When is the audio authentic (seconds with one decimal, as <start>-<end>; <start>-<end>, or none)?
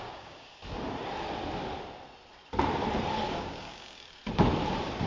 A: 0.6-3.3; 4.2-5.1